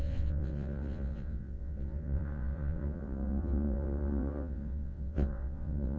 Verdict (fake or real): fake